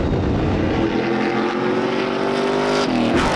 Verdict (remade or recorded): recorded